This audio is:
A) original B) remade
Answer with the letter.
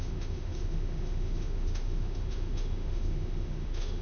B